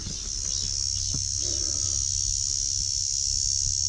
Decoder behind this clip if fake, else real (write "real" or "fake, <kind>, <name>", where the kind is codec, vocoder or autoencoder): real